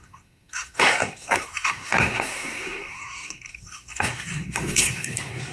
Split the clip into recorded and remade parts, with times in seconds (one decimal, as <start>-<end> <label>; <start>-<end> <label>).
0.0-5.5 remade